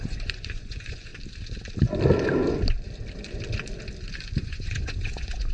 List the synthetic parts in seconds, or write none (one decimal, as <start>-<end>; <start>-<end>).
0.0-1.1; 4.4-5.5